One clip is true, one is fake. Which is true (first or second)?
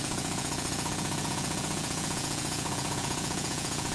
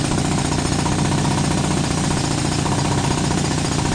second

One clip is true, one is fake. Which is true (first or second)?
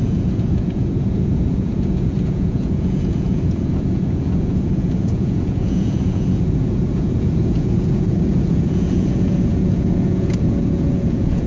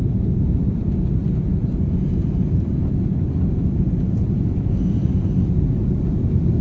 second